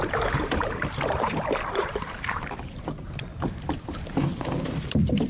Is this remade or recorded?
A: remade